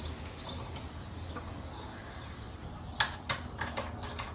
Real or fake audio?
real